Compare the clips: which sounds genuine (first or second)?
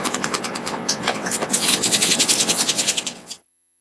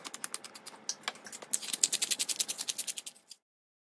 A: second